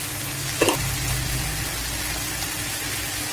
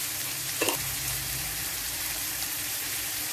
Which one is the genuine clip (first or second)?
first